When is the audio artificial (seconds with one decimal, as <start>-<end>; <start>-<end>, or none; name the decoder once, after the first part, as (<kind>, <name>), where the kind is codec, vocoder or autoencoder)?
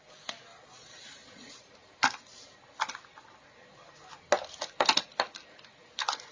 0.5-1.5 (vocoder, Vocos)